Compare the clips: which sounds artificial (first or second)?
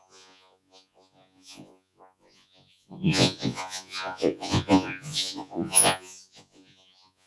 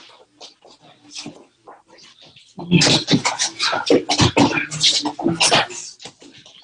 first